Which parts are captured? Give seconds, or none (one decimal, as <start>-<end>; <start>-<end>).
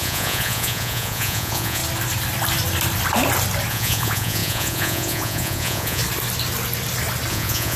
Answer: 1.8-3.7; 6.0-7.3